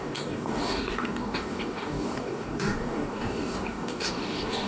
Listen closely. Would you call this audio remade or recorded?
remade